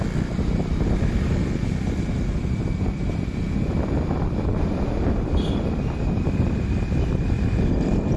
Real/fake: real